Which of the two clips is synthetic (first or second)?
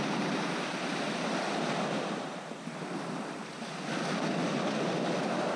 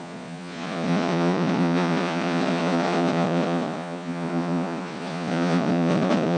second